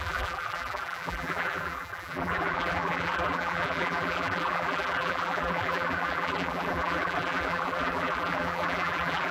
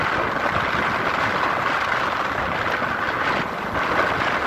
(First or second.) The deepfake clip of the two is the first